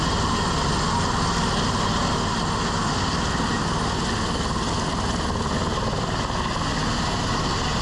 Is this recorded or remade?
recorded